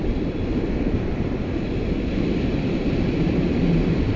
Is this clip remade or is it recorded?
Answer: recorded